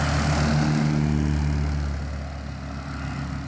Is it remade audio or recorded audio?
recorded